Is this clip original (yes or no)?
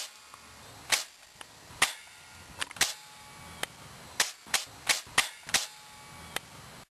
yes